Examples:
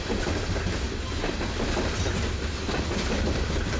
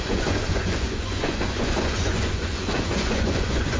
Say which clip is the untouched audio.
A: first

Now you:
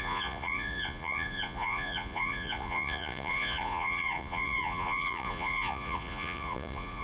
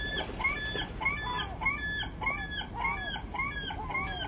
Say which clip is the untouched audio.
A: second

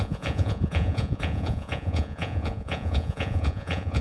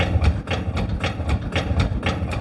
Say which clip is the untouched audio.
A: second